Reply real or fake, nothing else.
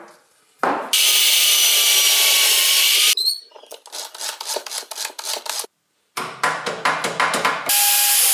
real